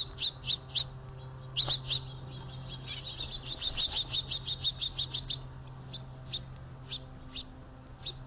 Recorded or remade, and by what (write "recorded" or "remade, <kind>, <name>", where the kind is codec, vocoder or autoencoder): recorded